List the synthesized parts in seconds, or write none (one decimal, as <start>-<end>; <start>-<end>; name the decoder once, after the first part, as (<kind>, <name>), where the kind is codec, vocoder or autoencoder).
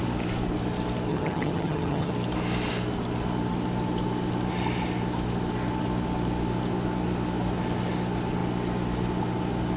1.1-2.1 (vocoder, HiFi-GAN)